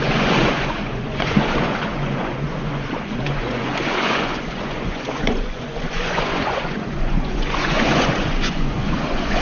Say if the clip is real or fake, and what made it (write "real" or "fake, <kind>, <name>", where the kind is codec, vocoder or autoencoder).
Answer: fake, vocoder, Vocos